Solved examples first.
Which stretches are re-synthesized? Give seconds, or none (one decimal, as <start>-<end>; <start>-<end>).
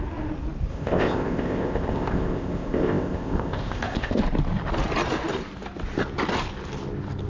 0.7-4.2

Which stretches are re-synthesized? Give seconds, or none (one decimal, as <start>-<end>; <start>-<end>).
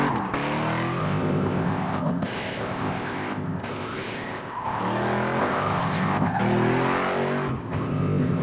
1.0-4.8; 5.4-6.4; 7.6-8.4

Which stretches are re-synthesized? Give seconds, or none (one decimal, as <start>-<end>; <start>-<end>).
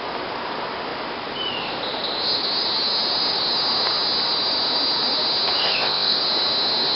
5.6-6.2